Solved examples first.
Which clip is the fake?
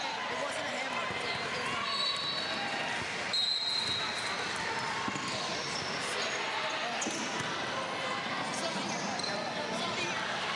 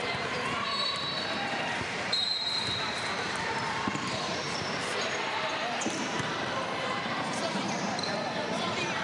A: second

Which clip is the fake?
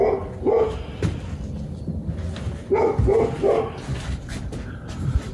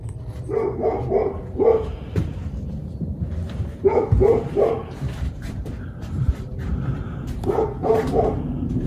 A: second